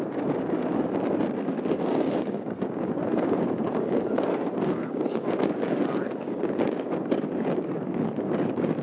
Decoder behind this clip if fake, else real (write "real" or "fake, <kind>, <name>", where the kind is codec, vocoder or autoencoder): fake, codec, DAC